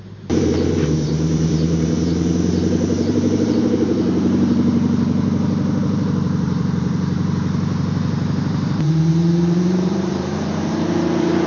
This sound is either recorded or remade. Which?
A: remade